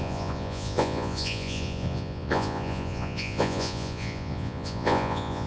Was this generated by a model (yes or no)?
yes